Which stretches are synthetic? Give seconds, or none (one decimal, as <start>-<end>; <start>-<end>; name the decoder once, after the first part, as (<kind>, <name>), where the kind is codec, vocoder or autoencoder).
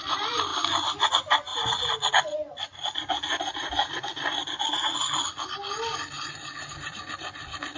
0.0-0.5 (vocoder, BigVGAN v2); 1.1-1.5; 2.1-2.7; 6.4-7.8